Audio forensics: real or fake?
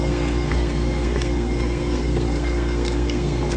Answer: fake